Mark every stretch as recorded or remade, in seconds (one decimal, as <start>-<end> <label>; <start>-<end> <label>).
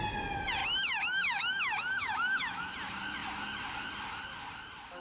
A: 0.0-0.6 recorded; 0.6-2.7 remade; 2.7-5.0 recorded